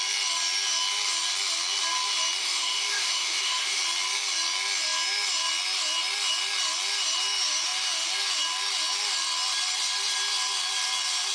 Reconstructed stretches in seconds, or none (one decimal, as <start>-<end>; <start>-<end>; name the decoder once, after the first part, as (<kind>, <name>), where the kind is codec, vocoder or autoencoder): 2.4-3.8 (autoencoder, DAC-VAE)